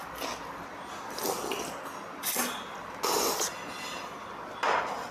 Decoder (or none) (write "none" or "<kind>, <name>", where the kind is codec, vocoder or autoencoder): none